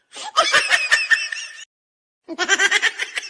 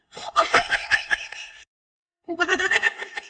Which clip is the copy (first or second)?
second